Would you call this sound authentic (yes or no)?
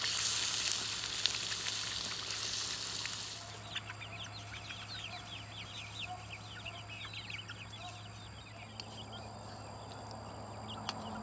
yes